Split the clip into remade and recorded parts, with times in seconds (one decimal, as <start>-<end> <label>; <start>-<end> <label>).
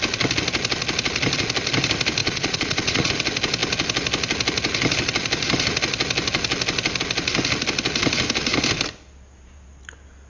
0.0-2.2 recorded; 2.2-3.1 remade; 3.1-10.3 recorded